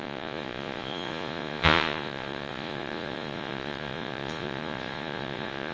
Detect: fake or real fake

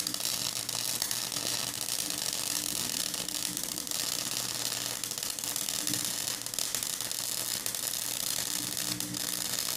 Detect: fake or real real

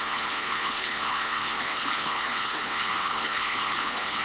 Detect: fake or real fake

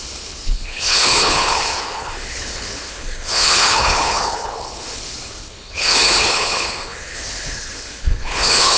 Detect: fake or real fake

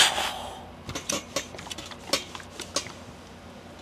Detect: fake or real real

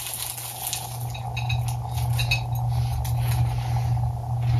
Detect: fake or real real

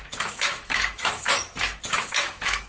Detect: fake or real fake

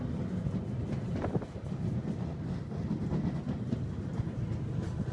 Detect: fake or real real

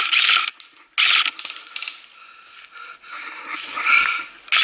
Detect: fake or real real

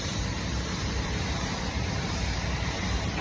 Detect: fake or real fake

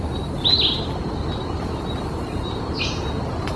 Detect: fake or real real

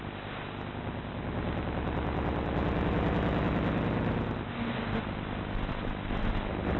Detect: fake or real real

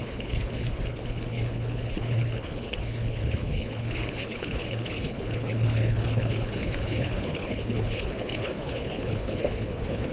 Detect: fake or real fake